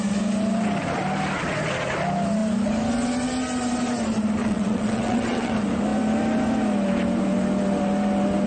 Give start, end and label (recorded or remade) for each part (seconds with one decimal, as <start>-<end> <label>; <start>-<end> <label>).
0.0-4.4 recorded; 4.4-5.5 remade; 5.5-8.5 recorded